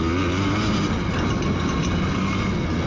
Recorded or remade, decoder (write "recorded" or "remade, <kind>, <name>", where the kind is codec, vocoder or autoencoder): recorded